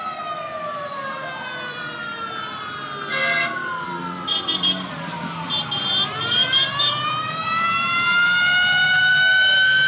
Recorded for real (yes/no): no